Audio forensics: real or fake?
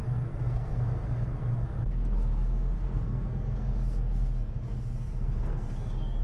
fake